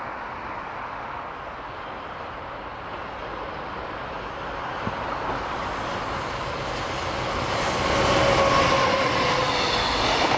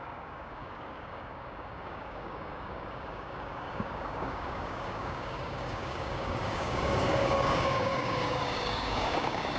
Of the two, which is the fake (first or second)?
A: second